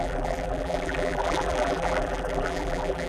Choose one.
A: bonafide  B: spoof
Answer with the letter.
B